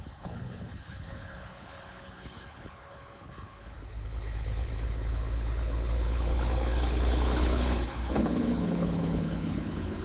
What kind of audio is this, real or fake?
fake